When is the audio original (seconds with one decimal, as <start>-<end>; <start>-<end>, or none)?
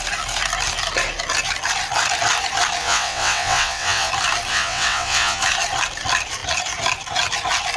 0.0-2.8; 4.1-4.5; 5.4-7.8